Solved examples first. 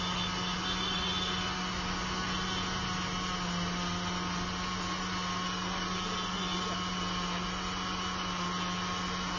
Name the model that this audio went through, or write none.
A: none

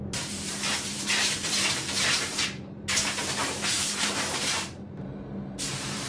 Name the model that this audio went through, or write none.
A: vocoder, BigVGAN v2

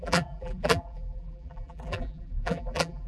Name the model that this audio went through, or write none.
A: vocoder, BigVGAN v2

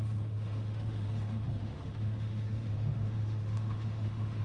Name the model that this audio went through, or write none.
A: autoencoder, DAC-VAE